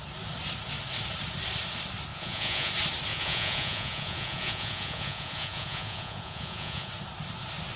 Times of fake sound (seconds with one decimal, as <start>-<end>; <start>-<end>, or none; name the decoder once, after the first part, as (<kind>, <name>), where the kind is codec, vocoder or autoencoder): 2.1-2.7 (vocoder, Vocos); 3.1-6.9

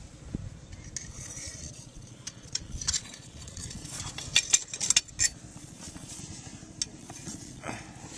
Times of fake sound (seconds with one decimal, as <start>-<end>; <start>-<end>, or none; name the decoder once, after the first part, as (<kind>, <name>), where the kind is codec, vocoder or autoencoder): 1.1-4.0 (vocoder, Vocos); 5.5-6.2; 7.0-7.7

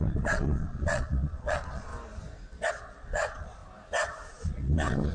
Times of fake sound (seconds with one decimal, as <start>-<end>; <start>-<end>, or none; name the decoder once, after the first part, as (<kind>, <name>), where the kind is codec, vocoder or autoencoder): 0.0-1.9 (vocoder, Vocos); 2.7-3.6; 4.3-5.1